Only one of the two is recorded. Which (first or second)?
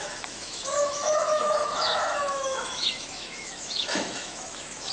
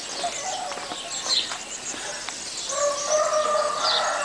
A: second